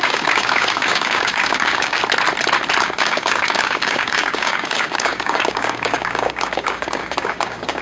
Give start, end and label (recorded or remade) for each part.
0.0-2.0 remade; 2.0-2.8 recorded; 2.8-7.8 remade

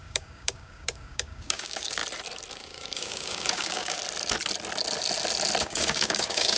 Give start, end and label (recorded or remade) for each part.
0.0-2.0 remade; 2.0-2.5 recorded; 2.5-4.0 remade; 4.0-5.6 recorded; 5.6-6.6 remade

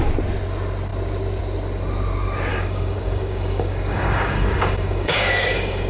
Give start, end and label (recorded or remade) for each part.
0.0-2.5 recorded; 2.5-5.9 remade

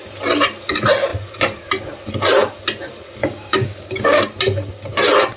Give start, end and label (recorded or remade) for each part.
0.0-3.2 recorded; 3.2-4.2 remade; 4.2-5.4 recorded

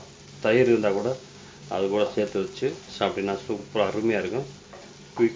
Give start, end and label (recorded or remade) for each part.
0.0-1.0 recorded; 1.0-2.2 remade; 2.2-5.4 recorded

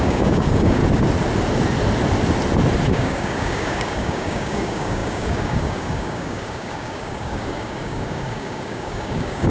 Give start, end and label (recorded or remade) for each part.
0.0-0.8 remade; 0.8-2.9 recorded; 2.9-9.5 remade

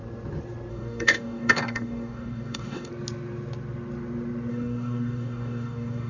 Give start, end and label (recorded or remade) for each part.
0.0-0.7 recorded; 0.7-2.9 remade; 2.9-4.5 recorded; 4.5-6.1 remade